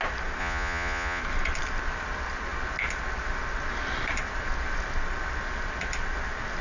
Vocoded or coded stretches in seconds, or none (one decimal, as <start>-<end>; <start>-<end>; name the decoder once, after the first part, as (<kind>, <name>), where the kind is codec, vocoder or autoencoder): 0.4-1.2 (vocoder, Vocos)